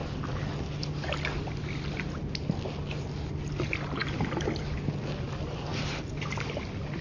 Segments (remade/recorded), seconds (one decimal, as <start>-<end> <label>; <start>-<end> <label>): 0.0-7.0 recorded